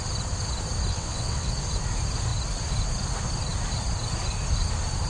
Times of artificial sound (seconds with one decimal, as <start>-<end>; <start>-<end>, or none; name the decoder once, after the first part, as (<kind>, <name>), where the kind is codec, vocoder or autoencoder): 0.9-1.5 (vocoder, WaveNeXt)